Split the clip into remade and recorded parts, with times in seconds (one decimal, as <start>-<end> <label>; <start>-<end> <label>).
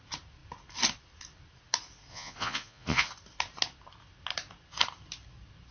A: 0.0-2.1 recorded; 2.1-3.1 remade; 3.1-5.7 recorded